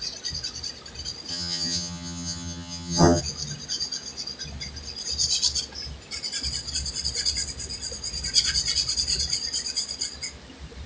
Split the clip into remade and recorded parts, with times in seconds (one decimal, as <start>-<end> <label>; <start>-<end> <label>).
0.0-1.3 recorded; 1.3-3.2 remade; 3.2-10.9 recorded